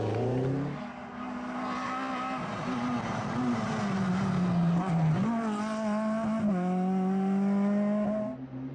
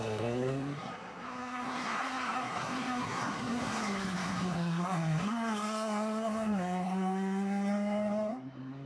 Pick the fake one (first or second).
second